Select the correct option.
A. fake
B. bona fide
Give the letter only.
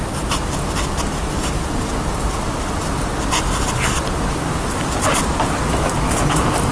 B